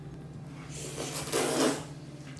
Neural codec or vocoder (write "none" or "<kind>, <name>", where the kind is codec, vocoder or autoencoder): none